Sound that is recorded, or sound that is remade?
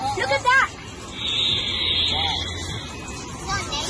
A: recorded